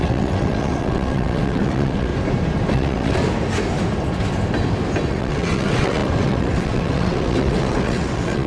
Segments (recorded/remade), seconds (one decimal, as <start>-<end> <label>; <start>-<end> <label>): 0.0-2.1 remade; 2.1-2.7 recorded; 2.7-3.2 remade; 3.2-5.1 recorded; 5.1-8.5 remade